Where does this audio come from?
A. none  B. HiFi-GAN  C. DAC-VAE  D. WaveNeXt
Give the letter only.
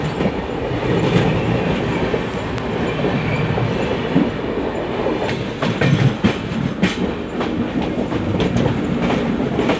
A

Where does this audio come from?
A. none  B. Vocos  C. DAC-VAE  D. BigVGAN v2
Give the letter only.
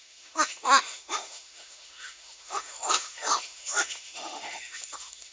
C